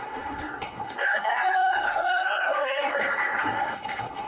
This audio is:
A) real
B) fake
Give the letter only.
B